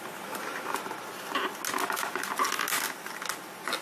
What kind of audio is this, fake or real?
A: real